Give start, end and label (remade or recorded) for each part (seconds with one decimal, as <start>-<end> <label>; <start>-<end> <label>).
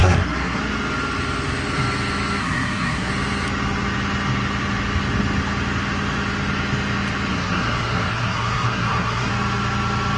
0.0-0.6 remade; 0.6-2.4 recorded; 2.4-3.1 remade; 3.1-7.3 recorded; 7.3-9.3 remade; 9.3-10.2 recorded